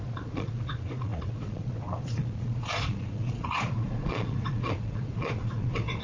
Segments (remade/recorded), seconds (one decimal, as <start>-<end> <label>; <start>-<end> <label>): 0.0-6.0 remade